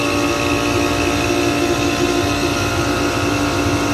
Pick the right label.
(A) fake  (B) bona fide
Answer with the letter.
B